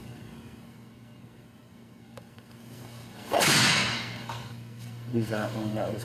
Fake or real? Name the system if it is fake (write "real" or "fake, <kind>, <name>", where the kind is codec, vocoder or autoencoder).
fake, codec, SNAC